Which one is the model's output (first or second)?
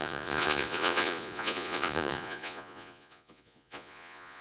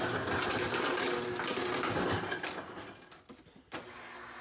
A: first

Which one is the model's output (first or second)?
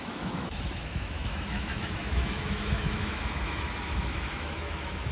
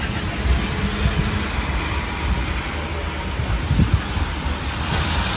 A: first